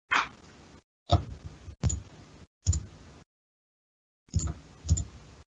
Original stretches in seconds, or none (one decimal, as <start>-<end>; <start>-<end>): 0.0-5.5